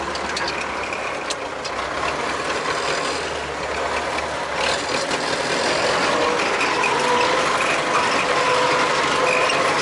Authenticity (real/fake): real